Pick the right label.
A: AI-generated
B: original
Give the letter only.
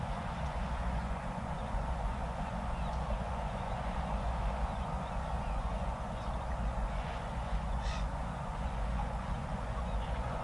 A